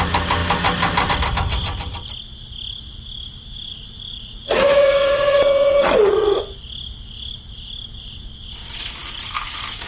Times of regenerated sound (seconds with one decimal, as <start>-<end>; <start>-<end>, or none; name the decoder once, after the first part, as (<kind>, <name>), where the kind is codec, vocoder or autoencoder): 3.7-6.4 (vocoder, Vocos)